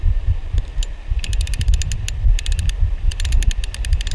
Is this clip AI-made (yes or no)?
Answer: no